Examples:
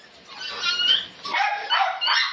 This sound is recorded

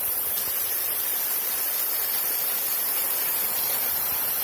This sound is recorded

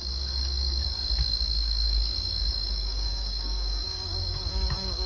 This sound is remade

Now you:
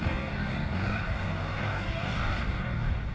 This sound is remade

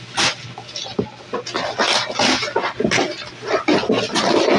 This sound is recorded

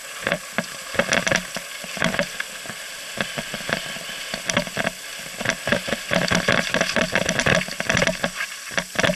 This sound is recorded